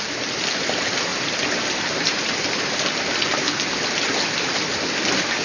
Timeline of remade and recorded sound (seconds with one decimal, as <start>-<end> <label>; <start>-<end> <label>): 0.0-5.4 recorded